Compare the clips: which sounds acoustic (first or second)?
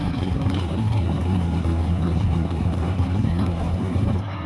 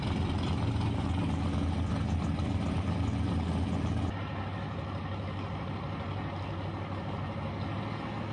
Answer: second